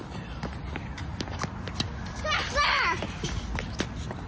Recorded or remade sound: recorded